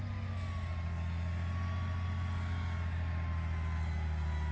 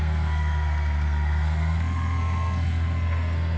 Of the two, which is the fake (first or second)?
second